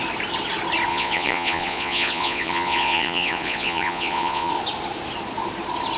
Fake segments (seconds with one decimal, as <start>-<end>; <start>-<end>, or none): 0.9-4.5